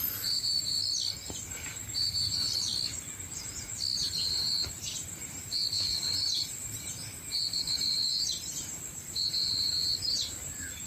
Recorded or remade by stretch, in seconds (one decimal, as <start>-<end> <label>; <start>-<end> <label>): 0.0-0.8 remade; 0.8-1.5 recorded; 1.5-2.5 remade; 2.5-4.0 recorded; 4.0-10.9 remade